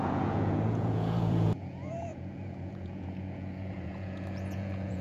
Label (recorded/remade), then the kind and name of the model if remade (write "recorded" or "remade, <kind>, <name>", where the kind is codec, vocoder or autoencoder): remade, vocoder, Vocos